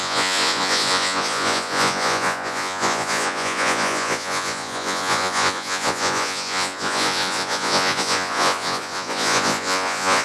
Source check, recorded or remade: remade